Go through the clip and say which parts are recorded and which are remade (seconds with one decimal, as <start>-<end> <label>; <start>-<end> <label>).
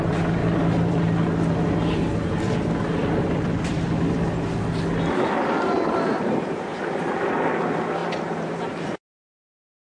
0.0-0.4 recorded; 0.4-1.0 remade; 1.0-3.0 recorded; 3.0-3.7 remade; 3.7-6.7 recorded; 6.7-7.3 remade; 7.3-8.0 recorded; 8.0-9.1 remade; 9.1-9.8 recorded